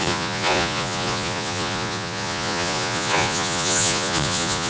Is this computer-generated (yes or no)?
yes